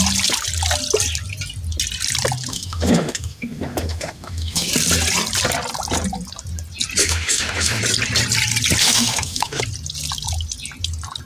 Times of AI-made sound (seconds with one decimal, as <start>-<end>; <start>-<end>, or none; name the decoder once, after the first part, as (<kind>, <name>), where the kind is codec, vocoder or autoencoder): 2.5-4.7 (autoencoder, DAC-VAE); 7.0-7.8; 8.8-9.6